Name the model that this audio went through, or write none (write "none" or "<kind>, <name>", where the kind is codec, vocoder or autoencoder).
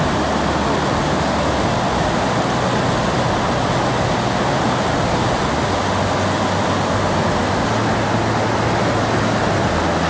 none